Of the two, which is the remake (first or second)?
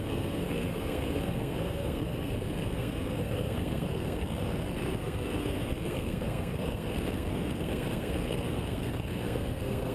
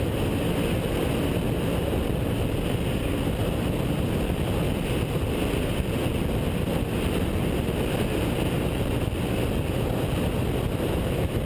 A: first